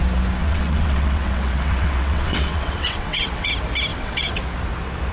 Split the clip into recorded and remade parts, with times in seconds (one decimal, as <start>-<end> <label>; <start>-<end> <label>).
0.0-0.4 recorded; 0.4-3.5 remade; 3.5-3.9 recorded; 3.9-4.4 remade; 4.4-5.1 recorded